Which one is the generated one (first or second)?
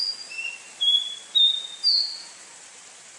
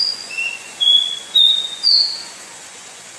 second